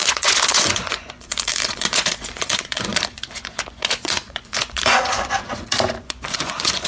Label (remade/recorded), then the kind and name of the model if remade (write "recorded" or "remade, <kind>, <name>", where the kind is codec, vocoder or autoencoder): remade, vocoder, Vocos